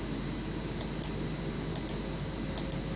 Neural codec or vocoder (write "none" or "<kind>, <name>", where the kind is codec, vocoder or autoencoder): none